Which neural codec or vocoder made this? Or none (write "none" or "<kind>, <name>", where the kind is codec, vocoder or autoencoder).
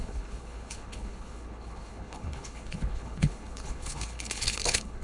codec, HILCodec